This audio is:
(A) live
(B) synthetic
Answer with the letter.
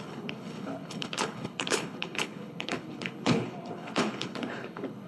B